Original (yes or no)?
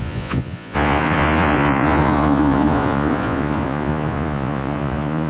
no